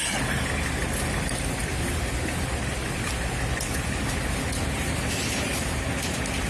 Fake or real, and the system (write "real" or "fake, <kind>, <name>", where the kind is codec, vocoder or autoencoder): real